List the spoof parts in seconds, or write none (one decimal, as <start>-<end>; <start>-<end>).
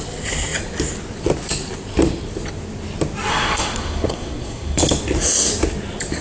3.3-4.8